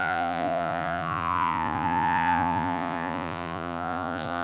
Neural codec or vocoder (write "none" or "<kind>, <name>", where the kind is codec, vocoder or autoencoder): vocoder, Vocos